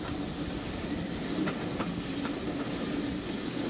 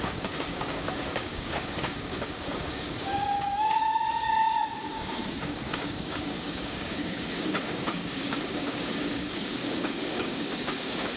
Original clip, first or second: first